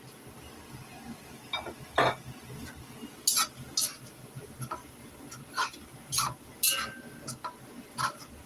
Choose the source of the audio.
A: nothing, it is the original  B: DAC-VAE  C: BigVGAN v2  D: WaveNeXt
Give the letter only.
A